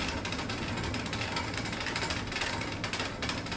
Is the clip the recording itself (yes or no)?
yes